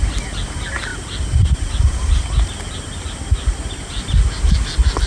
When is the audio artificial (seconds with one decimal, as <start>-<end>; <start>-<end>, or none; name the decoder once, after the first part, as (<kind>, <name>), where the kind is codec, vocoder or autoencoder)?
none